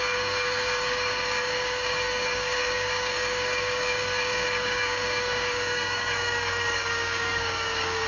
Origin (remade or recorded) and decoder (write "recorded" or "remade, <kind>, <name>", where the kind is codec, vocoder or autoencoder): remade, codec, DAC